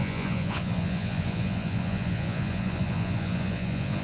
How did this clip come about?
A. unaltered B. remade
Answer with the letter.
B